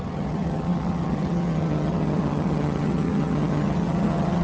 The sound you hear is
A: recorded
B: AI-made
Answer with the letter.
B